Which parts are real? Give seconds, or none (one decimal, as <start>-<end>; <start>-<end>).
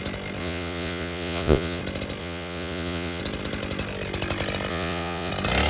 0.0-0.4; 1.8-2.2; 3.2-4.7; 5.3-5.7